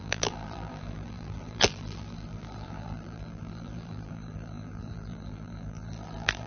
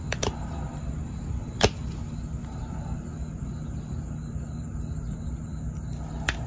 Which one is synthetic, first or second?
first